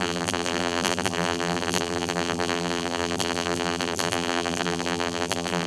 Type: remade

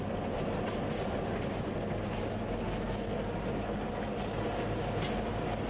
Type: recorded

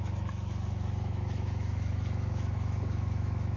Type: remade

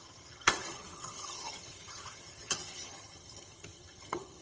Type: remade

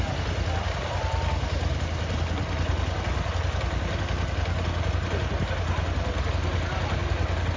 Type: recorded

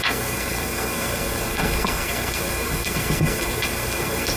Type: remade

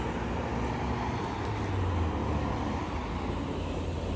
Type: recorded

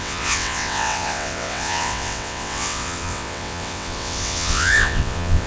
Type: remade